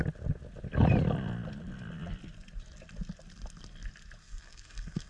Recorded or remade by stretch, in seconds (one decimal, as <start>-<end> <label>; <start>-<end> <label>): 0.0-4.2 recorded; 4.2-5.1 remade